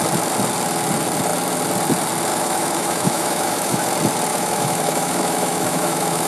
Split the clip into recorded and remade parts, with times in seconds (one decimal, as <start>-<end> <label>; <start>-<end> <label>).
0.0-2.3 recorded; 2.3-3.9 remade; 3.9-4.3 recorded; 4.3-6.3 remade